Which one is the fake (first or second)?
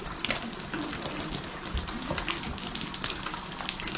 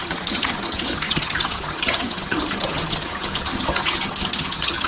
second